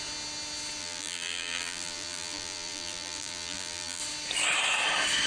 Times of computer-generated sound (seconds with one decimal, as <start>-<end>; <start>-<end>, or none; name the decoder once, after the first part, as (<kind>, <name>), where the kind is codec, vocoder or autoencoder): 0.8-4.0 (vocoder, BigVGAN v2)